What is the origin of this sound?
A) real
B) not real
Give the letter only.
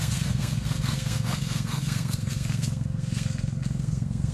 B